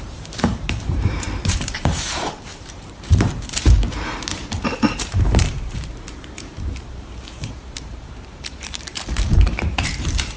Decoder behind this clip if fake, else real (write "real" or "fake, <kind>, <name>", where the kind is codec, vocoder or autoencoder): fake, vocoder, BigVGAN v2